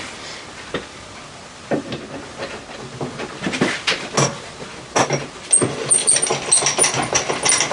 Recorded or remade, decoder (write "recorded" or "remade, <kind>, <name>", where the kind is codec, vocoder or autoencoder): recorded